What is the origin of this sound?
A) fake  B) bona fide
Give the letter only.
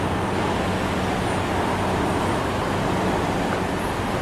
B